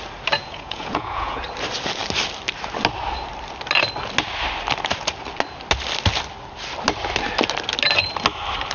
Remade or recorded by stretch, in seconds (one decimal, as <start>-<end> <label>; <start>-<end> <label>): 0.0-0.4 recorded; 0.4-1.4 remade; 1.4-8.7 recorded